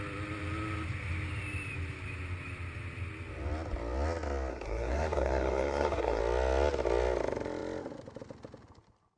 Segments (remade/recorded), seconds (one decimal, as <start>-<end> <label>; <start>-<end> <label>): 0.0-4.5 recorded; 4.5-6.2 remade; 6.2-9.2 recorded